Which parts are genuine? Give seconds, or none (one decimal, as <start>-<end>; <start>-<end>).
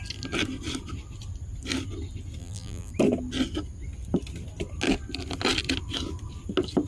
0.0-2.4; 2.9-6.9